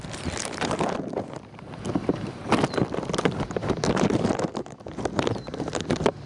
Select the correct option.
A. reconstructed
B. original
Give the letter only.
A